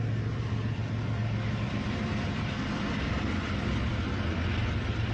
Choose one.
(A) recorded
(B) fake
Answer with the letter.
B